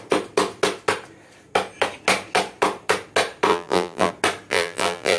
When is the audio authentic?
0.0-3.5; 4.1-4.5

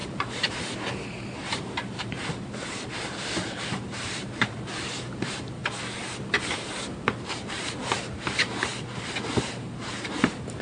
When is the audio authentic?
5.6-7.5; 8.7-9.5